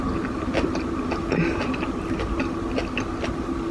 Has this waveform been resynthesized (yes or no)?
no